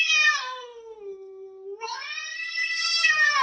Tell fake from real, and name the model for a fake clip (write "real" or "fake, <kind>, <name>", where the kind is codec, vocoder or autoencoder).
fake, codec, SNAC